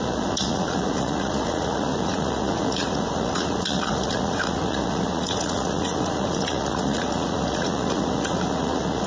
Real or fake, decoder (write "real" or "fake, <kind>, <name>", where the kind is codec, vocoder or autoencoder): fake, vocoder, Vocos